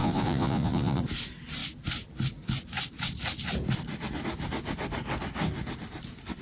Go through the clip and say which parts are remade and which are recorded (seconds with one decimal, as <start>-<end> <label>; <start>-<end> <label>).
0.0-1.0 remade; 1.0-6.4 recorded